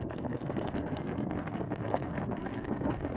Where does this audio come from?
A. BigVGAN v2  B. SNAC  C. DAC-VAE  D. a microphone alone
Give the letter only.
B